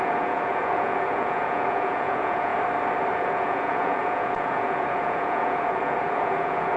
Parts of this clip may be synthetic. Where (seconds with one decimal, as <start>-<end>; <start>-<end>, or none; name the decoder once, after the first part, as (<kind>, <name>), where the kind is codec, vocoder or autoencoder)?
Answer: 0.0-2.5 (vocoder, Vocos); 3.1-6.8

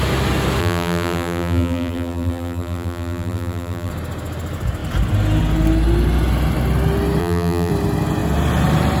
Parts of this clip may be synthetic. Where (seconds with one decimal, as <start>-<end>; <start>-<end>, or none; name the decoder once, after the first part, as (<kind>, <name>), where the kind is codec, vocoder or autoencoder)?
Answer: 0.6-3.9 (vocoder, BigVGAN v2); 7.2-7.7

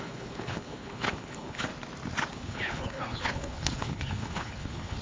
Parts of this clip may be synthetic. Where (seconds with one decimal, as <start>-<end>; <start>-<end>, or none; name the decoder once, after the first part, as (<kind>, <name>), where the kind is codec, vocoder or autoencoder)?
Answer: 0.0-1.7 (codec, HILCodec); 2.3-5.0

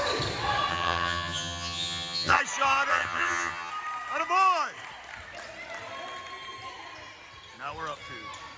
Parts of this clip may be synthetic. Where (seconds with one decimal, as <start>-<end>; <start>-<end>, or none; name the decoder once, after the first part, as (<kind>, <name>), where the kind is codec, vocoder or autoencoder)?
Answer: 0.7-2.4 (vocoder, HiFi-GAN); 2.9-3.7

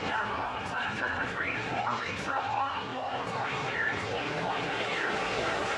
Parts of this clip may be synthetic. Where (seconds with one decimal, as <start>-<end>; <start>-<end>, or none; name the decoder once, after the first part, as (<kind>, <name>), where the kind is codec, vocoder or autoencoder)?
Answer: 0.0-5.8 (codec, SNAC)

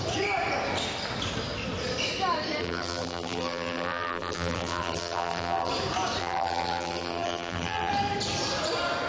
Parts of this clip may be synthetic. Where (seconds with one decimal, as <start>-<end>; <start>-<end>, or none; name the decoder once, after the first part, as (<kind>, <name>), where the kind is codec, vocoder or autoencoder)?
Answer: 2.6-5.7 (vocoder, BigVGAN v2); 6.2-7.9